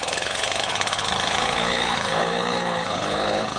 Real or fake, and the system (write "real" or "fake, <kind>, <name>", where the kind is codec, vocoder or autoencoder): fake, codec, HILCodec